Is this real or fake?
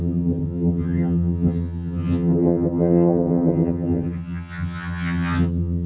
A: fake